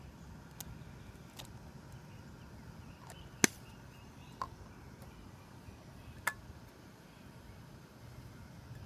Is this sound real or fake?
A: real